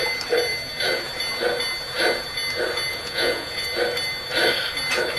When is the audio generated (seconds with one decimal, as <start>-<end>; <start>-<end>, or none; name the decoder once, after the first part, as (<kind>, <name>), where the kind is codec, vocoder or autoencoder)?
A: 2.9-3.7 (vocoder, Vocos)